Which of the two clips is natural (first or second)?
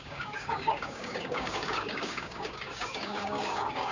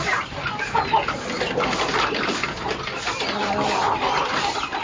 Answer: second